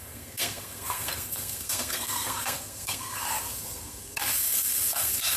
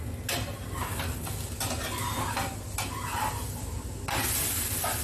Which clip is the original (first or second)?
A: second